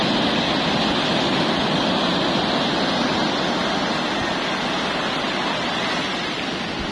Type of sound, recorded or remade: recorded